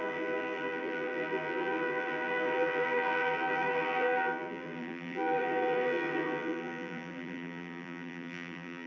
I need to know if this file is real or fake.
fake